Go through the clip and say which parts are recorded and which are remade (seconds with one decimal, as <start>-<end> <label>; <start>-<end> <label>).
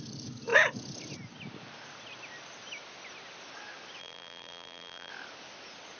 0.0-4.0 recorded; 4.0-5.1 remade; 5.1-6.0 recorded